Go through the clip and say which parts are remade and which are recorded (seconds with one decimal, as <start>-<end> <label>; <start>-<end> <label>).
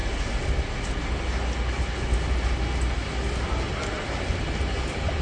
0.0-5.2 recorded